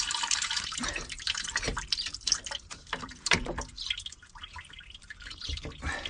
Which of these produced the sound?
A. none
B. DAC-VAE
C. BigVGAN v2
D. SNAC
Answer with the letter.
C